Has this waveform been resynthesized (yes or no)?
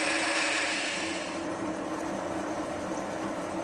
yes